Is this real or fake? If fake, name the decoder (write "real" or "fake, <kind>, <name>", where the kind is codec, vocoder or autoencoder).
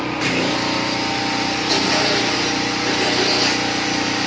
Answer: real